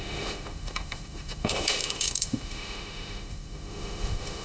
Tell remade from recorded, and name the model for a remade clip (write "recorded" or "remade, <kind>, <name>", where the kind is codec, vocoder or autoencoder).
remade, autoencoder, DAC-VAE